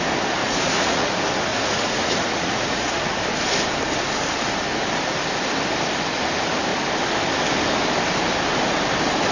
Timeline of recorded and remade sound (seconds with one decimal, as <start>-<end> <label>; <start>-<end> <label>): 0.0-0.4 recorded; 0.4-1.1 remade; 1.1-1.5 recorded; 1.5-3.2 remade; 3.2-9.3 recorded